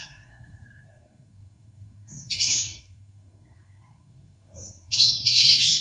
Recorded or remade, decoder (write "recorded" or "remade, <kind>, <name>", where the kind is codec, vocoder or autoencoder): remade, codec, SNAC